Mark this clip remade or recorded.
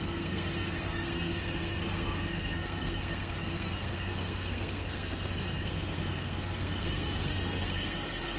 remade